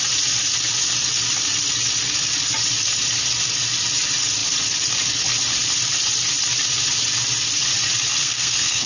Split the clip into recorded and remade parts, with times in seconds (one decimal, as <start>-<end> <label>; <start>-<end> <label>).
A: 0.0-8.2 recorded; 8.2-8.9 remade